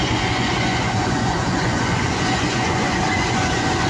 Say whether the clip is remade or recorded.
remade